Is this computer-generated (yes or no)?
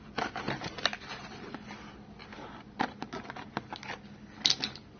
no